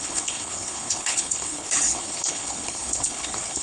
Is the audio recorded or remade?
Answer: remade